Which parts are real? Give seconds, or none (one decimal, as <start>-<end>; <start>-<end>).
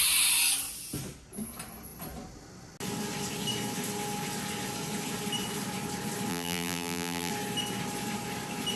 0.0-6.3; 7.3-8.8